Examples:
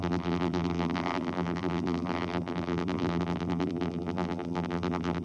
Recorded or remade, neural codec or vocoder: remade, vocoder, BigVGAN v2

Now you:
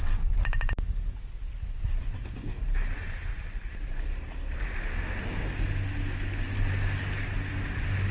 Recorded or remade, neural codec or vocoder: recorded